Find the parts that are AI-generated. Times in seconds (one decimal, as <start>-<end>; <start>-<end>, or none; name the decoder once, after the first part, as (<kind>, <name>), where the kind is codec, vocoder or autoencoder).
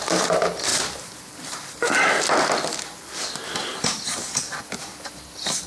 none